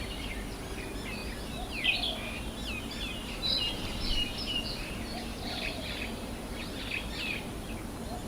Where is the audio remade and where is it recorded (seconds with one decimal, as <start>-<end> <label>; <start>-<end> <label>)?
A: 0.0-5.3 recorded; 5.3-6.0 remade; 6.0-8.3 recorded

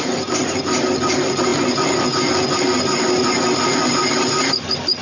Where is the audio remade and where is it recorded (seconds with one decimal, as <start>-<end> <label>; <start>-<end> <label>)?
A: 0.0-5.0 recorded

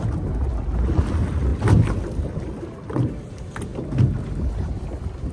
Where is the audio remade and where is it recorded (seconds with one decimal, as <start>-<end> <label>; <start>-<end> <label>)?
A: 0.0-5.3 recorded